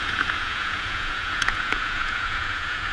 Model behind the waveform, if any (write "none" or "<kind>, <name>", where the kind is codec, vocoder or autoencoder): vocoder, Vocos